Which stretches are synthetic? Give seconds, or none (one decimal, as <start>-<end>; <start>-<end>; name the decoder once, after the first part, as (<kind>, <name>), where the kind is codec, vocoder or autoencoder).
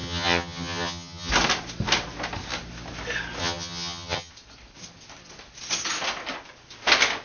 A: 0.0-1.3 (vocoder, HiFi-GAN); 3.4-4.3